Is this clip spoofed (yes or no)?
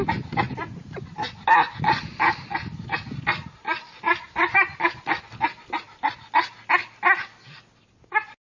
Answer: no